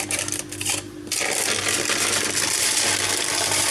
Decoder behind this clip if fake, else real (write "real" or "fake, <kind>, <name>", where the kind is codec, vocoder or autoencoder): real